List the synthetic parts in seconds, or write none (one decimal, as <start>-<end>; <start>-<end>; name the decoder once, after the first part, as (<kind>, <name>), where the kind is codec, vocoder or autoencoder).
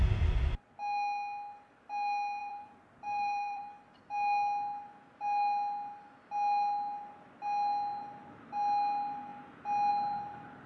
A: 2.4-3.6 (vocoder, BigVGAN v2)